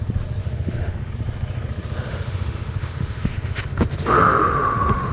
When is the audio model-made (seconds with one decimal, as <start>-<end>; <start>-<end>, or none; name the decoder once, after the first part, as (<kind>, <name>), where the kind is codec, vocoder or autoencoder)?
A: 0.4-1.1 (autoencoder, DAC-VAE); 2.1-5.1